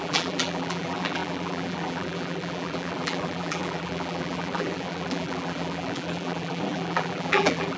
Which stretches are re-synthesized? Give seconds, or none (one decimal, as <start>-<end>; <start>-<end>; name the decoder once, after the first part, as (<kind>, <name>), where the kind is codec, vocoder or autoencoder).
0.0-7.8 (vocoder, BigVGAN v2)

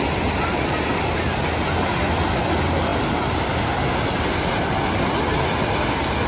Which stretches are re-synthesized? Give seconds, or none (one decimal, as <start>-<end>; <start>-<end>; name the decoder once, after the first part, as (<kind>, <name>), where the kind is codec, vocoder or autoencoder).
none

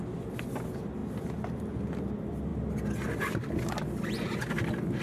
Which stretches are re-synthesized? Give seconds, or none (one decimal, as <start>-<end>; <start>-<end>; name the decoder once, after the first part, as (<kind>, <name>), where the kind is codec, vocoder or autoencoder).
none

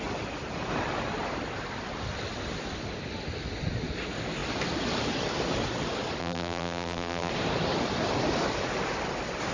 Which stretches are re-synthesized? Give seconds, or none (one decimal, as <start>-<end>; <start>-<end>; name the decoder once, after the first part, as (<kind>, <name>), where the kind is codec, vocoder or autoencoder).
6.2-7.3 (vocoder, BigVGAN v2)

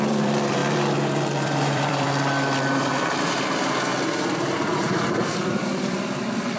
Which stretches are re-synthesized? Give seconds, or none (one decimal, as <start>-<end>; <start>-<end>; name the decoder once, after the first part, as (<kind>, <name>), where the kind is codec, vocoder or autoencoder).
0.0-3.9 (vocoder, BigVGAN v2); 4.9-6.6

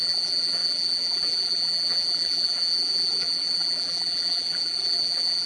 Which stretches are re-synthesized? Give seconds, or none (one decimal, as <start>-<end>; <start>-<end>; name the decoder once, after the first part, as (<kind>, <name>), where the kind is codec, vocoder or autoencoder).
0.0-5.5 (vocoder, BigVGAN v2)

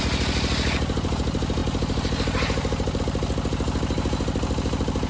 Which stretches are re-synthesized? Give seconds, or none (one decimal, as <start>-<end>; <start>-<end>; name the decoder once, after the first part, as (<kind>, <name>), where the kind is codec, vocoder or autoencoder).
1.6-3.0 (vocoder, BigVGAN v2)